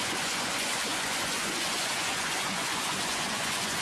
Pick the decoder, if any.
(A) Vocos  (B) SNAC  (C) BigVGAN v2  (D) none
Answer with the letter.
A